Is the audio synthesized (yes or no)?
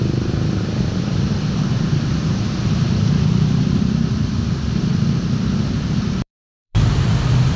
yes